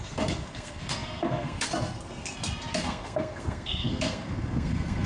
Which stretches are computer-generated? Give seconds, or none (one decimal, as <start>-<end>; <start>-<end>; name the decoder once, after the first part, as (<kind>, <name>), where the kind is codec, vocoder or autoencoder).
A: 0.0-5.1 (codec, SNAC)

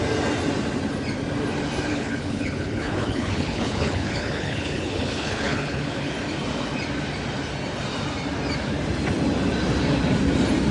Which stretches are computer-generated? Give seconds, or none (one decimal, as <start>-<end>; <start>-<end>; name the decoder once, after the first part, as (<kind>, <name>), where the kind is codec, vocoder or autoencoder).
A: 1.9-6.1 (codec, HILCodec)